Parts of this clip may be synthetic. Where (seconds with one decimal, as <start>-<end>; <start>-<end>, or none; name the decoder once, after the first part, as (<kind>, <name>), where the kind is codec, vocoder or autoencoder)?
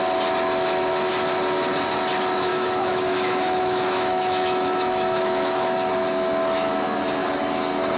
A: 2.5-5.9 (autoencoder, DAC-VAE)